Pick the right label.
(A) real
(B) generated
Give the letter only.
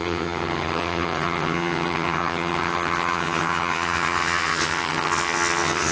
B